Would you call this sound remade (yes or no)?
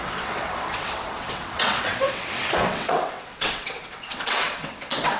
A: yes